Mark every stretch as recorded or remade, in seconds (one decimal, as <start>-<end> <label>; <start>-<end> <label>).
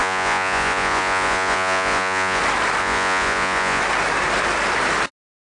0.0-2.4 remade; 2.4-2.8 recorded; 2.8-3.8 remade; 3.8-5.5 recorded